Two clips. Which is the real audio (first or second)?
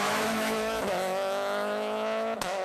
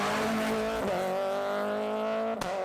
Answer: second